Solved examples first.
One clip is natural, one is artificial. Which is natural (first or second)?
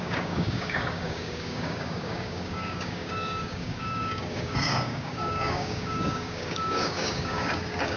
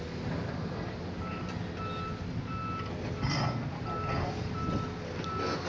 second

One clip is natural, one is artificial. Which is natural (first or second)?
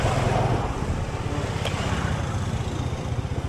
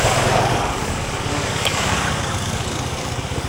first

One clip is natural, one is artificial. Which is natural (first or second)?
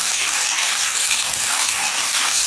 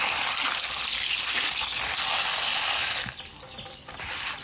second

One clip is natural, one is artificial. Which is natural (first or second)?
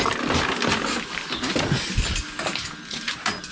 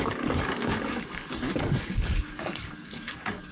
first